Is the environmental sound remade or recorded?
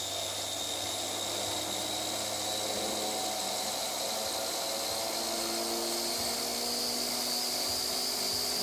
recorded